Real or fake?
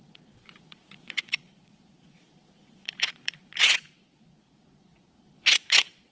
fake